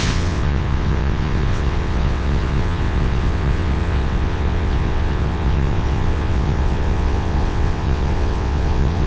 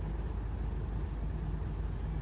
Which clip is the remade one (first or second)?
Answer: first